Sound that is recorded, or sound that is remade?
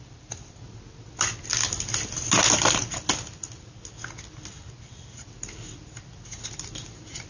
recorded